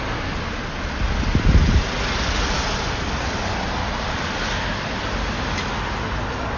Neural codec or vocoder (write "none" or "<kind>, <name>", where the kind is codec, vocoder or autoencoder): none